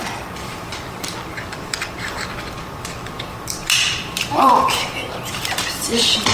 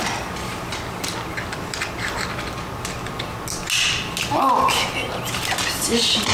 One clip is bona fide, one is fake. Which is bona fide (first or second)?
second